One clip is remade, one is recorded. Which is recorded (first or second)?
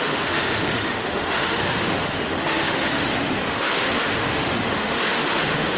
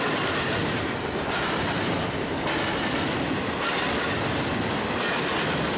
second